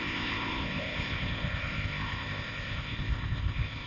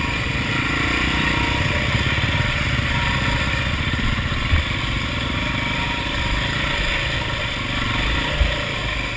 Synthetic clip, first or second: first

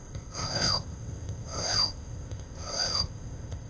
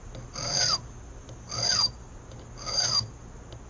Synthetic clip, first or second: first